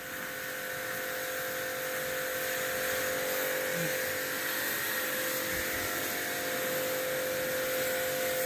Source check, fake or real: real